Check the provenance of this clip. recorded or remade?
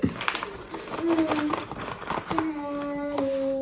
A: recorded